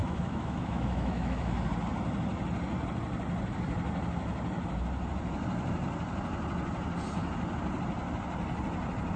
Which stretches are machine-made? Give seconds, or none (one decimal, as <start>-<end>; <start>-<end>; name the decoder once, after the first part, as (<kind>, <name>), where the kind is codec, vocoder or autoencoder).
0.0-1.7 (autoencoder, DAC-VAE)